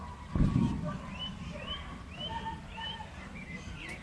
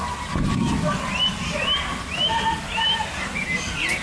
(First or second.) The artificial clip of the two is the first